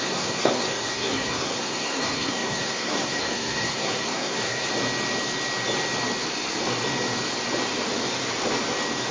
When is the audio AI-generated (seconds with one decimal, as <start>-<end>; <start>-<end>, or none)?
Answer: 0.0-4.7